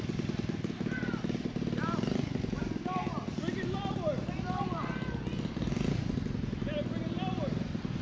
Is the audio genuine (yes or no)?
yes